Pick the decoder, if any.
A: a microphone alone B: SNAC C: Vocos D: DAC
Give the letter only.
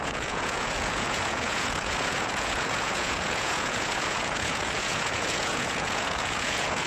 C